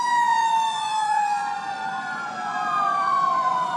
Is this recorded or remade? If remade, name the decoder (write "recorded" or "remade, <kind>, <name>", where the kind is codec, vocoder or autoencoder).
remade, vocoder, Vocos